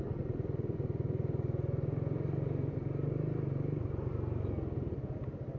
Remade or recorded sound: recorded